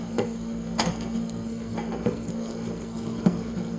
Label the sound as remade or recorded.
remade